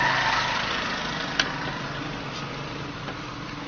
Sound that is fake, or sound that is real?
real